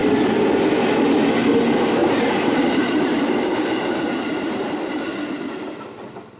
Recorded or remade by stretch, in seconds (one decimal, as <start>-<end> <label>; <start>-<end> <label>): 0.0-2.0 recorded; 2.0-5.3 remade; 5.3-6.4 recorded